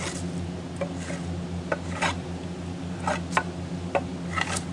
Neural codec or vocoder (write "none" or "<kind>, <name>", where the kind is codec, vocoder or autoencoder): none